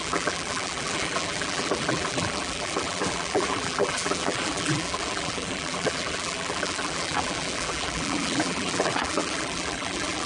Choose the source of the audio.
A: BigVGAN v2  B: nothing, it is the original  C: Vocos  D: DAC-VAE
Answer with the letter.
A